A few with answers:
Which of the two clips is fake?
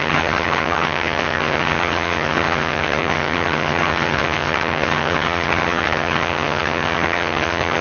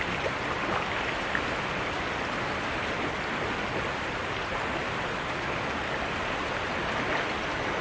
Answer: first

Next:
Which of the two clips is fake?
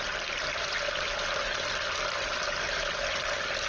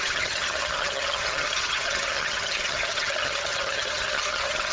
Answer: second